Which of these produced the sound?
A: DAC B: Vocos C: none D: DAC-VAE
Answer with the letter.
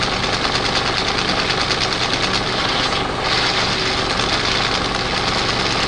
C